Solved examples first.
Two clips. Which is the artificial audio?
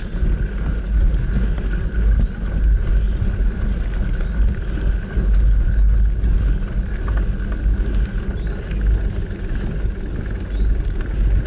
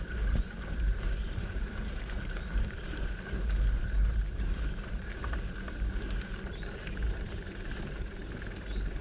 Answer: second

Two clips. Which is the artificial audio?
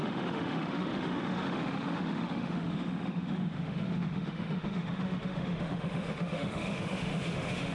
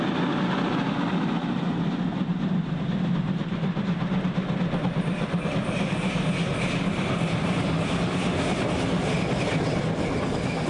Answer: first